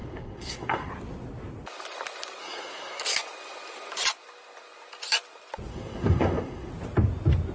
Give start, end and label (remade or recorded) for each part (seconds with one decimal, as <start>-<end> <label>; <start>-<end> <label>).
0.0-0.9 remade; 0.9-2.4 recorded; 2.4-3.0 remade; 3.0-5.7 recorded; 5.7-6.7 remade; 6.7-7.5 recorded